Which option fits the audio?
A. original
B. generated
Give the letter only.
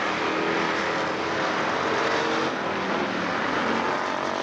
A